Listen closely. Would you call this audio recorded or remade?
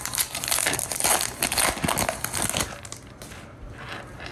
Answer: recorded